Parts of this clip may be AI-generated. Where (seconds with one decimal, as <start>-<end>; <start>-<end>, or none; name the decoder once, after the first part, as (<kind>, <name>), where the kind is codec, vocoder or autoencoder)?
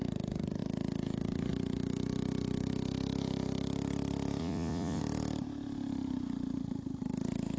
4.4-5.0 (vocoder, Vocos)